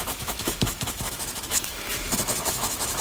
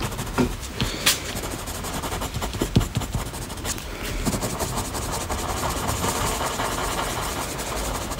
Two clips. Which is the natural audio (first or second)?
second